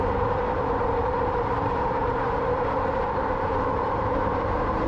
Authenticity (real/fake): fake